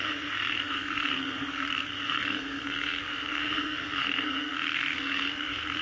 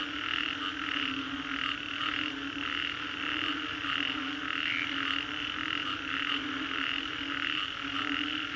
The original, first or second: second